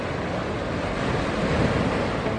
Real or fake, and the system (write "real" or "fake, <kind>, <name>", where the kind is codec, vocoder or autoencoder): real